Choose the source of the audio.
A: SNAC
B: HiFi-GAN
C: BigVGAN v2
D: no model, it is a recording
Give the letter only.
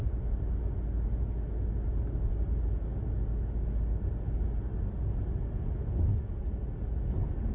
D